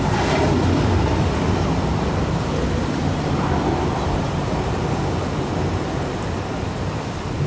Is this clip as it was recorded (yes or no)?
yes